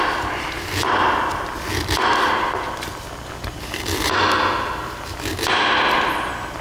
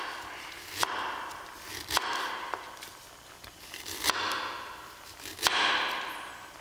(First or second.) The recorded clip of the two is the first